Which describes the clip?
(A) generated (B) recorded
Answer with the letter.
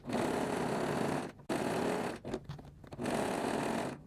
B